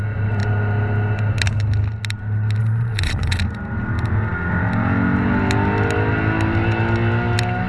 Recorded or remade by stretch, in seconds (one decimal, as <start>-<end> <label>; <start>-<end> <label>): 0.0-2.6 recorded; 2.6-3.4 remade; 3.4-7.7 recorded